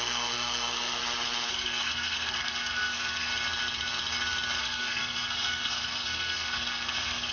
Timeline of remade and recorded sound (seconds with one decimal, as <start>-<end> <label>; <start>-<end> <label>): 0.0-1.0 remade; 1.0-1.5 recorded; 1.5-3.3 remade; 3.3-4.6 recorded; 4.6-7.3 remade